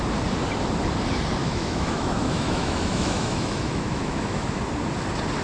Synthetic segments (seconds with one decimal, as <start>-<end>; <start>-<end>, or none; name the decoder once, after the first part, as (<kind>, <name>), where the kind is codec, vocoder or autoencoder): 1.4-4.6 (autoencoder, DAC-VAE)